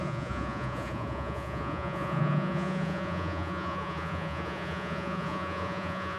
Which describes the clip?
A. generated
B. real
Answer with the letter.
A